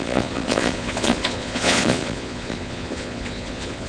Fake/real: fake